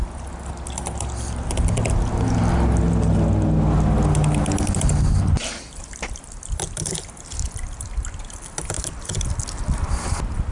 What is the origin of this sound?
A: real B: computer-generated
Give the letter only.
A